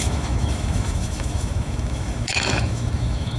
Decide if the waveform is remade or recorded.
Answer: remade